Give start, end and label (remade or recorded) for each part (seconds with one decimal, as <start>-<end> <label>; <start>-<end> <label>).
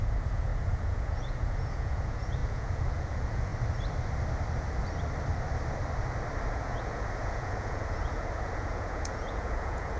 0.0-3.5 remade; 3.5-6.5 recorded; 6.5-10.0 remade